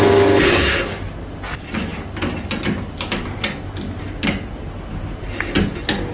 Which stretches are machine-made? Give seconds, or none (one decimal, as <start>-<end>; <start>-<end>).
none